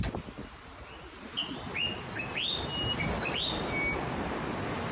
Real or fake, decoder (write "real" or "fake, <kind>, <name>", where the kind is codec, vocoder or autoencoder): real